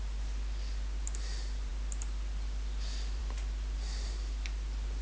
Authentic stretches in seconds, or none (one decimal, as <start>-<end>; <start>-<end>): 0.0-5.0

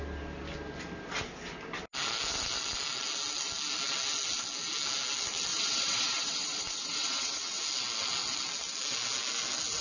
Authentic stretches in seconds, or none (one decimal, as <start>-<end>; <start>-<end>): 0.0-5.5; 7.6-9.8

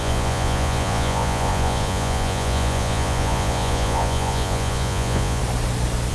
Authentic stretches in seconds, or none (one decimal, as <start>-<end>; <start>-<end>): 5.4-6.1